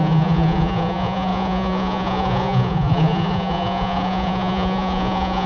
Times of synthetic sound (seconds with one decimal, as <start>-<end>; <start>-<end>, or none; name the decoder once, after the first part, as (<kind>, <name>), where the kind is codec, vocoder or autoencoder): 0.0-5.5 (vocoder, Vocos)